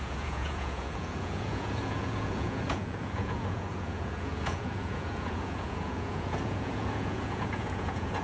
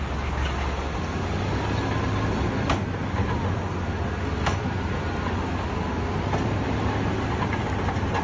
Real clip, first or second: second